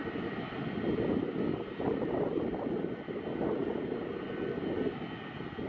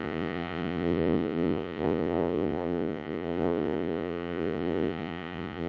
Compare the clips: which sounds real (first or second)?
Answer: first